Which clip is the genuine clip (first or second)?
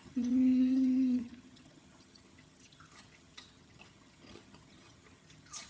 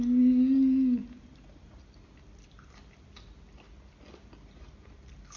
second